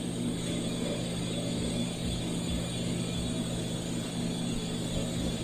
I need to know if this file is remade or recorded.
remade